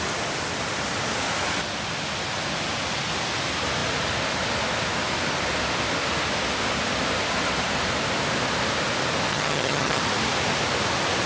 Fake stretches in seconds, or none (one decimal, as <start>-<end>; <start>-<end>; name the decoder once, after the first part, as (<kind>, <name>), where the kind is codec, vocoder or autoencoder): 9.3-10.0 (vocoder, HiFi-GAN)